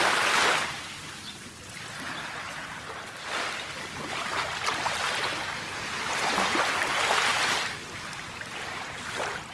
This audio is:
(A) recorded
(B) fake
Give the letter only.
A